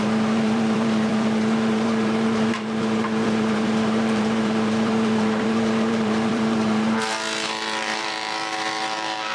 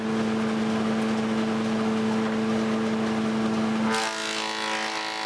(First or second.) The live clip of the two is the second